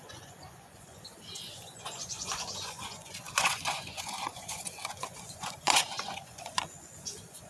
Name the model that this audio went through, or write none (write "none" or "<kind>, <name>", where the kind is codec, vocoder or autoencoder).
vocoder, Vocos